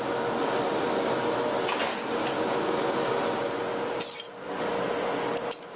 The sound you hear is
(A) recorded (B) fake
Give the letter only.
A